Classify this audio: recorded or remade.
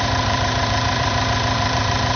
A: remade